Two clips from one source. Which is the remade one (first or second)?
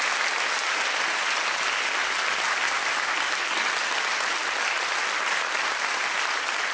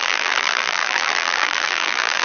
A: second